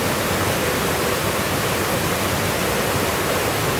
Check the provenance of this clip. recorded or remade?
recorded